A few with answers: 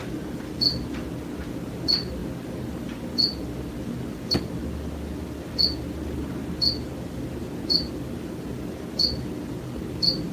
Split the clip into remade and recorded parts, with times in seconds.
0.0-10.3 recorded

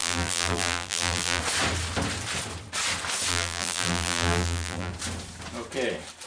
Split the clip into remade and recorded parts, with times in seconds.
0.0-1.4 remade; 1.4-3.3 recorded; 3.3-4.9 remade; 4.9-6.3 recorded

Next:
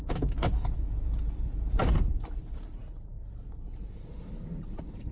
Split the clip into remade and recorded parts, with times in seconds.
0.0-5.1 remade

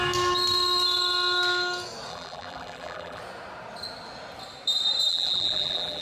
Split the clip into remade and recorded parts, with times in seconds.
0.0-2.1 recorded; 2.1-3.2 remade; 3.2-5.1 recorded; 5.1-6.0 remade

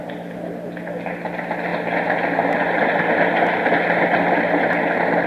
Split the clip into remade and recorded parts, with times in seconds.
0.0-5.3 recorded

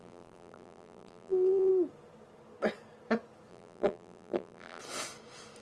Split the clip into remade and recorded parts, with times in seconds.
0.0-1.7 remade; 1.7-3.5 recorded; 3.5-4.8 remade; 4.8-5.6 recorded